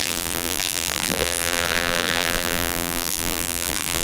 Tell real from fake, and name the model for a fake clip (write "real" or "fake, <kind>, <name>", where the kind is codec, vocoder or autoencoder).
fake, vocoder, BigVGAN v2